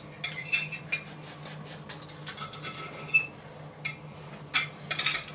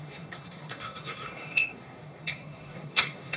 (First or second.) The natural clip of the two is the first